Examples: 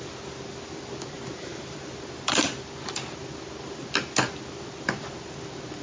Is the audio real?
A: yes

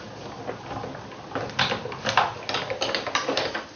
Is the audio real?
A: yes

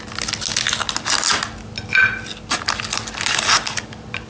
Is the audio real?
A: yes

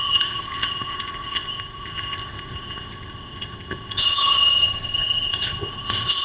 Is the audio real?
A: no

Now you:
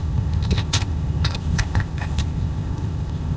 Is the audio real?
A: no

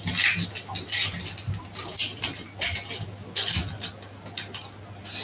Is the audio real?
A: yes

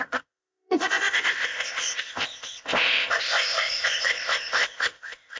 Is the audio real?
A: no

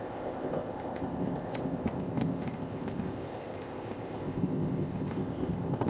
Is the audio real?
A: no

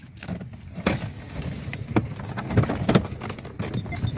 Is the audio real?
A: yes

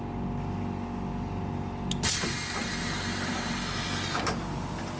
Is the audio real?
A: yes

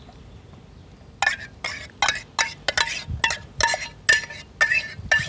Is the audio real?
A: yes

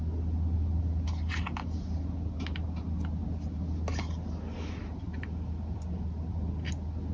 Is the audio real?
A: yes